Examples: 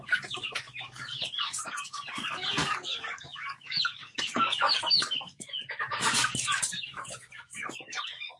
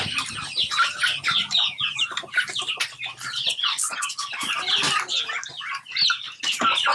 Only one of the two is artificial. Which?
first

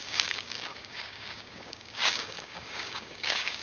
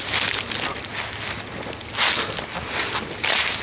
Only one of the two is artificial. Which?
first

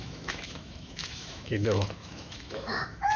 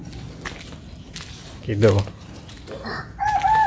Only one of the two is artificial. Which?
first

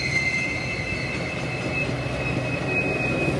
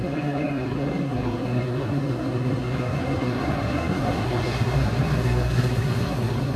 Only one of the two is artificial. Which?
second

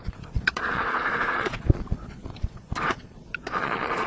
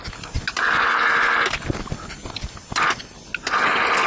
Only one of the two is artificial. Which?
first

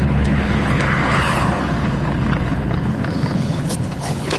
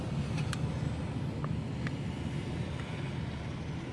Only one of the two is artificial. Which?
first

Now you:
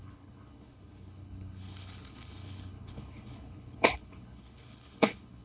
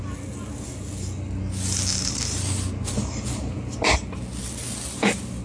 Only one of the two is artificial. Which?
first